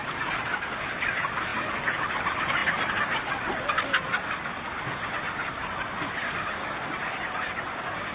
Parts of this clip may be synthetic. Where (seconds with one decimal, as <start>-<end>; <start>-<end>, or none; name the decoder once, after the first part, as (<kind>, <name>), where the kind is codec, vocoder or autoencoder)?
none